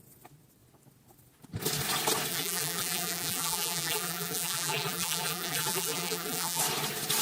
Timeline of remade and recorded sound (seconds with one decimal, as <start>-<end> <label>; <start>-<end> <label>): 0.0-2.3 recorded; 2.3-6.6 remade; 6.6-7.2 recorded